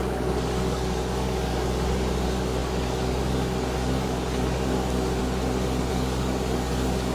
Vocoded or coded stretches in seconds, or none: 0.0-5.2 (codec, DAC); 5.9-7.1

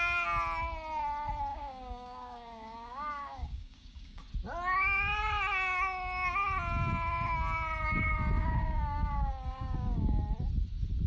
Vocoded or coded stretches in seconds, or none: 1.5-4.2 (codec, DAC); 8.4-10.2

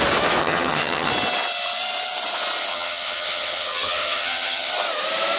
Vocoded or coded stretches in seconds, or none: 0.4-1.1 (vocoder, HiFi-GAN); 2.7-4.7